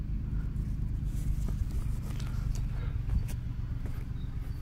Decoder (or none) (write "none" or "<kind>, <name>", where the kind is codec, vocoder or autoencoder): none